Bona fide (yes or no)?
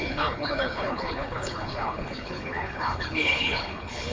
no